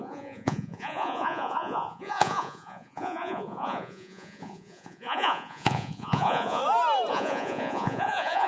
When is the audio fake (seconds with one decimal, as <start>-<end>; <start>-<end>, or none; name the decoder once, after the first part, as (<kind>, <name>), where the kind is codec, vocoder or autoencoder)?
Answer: 0.0-6.6 (vocoder, Vocos); 7.1-8.5